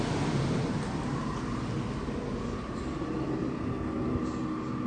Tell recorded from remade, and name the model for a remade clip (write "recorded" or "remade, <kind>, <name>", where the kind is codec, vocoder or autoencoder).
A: recorded